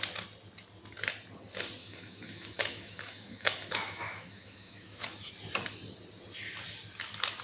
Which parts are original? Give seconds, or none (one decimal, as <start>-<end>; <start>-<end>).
0.0-1.8; 5.3-7.4